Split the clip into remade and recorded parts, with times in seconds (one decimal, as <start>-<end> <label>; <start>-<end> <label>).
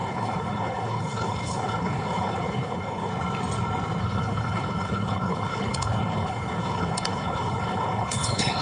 0.0-3.1 remade; 3.1-4.0 recorded; 4.0-8.6 remade